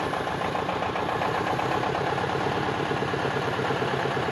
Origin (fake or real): fake